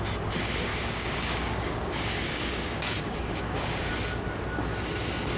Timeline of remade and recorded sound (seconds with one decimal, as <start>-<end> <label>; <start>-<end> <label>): 0.0-0.7 recorded; 0.7-3.9 remade; 3.9-5.4 recorded